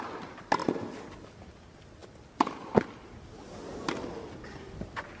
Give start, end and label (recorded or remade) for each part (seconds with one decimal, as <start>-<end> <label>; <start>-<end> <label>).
0.0-5.2 recorded